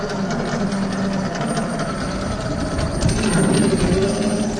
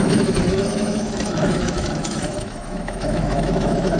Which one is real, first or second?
first